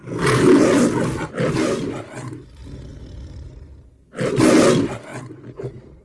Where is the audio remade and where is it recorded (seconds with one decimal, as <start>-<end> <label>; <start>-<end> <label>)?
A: 0.0-6.0 recorded